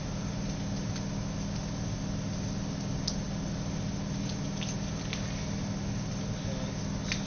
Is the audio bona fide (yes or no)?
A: yes